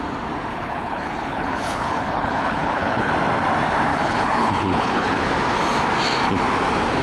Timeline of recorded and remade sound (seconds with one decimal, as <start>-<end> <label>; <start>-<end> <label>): 0.0-0.5 recorded; 0.5-3.1 remade; 3.1-3.9 recorded; 3.9-5.3 remade; 5.3-7.0 recorded